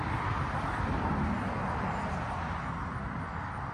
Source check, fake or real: real